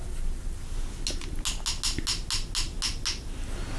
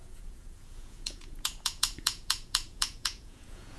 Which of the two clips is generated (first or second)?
second